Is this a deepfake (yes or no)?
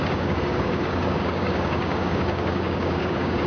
yes